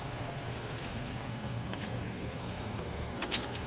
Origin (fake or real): fake